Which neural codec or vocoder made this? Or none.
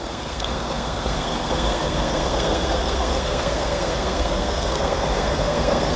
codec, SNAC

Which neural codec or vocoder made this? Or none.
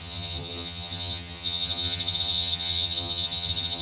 vocoder, HiFi-GAN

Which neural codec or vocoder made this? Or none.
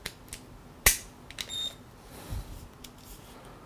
none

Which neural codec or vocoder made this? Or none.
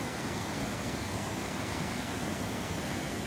codec, SNAC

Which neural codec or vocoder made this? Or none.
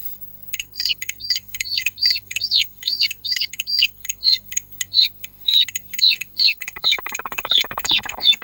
codec, SNAC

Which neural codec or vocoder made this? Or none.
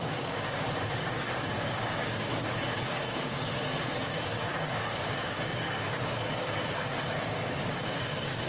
codec, DAC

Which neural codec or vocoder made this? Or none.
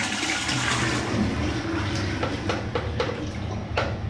none